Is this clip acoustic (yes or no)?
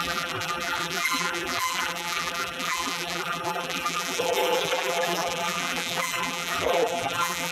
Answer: no